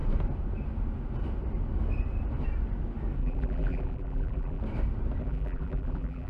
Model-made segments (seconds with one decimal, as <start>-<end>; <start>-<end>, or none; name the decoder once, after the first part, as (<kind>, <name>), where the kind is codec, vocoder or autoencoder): 3.2-4.6 (vocoder, BigVGAN v2); 5.2-6.3